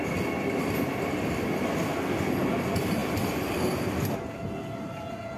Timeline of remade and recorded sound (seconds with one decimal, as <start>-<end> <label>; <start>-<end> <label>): 0.0-3.0 recorded; 3.0-3.6 remade; 3.6-5.4 recorded

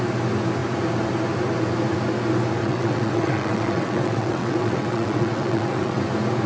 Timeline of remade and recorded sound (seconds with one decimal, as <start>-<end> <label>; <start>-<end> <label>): 0.0-2.6 recorded; 2.6-6.0 remade; 6.0-6.5 recorded

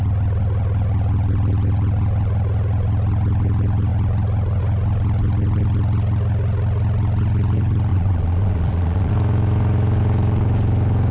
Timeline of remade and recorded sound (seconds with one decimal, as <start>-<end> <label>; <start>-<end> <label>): 0.0-7.9 recorded; 7.9-9.1 remade; 9.1-11.1 recorded

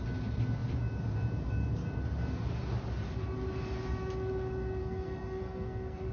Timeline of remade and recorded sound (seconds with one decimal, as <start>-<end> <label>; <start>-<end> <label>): 0.0-4.8 recorded; 4.8-6.1 remade